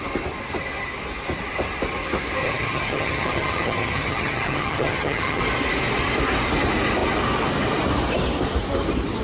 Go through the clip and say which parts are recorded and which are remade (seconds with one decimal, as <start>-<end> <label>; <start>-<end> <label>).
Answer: 0.0-2.4 recorded; 2.4-5.4 remade; 5.4-9.2 recorded